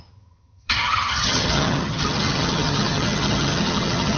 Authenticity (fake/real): fake